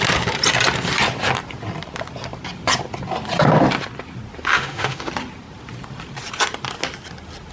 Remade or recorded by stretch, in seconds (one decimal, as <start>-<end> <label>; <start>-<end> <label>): 0.0-4.5 recorded; 4.5-5.1 remade; 5.1-7.5 recorded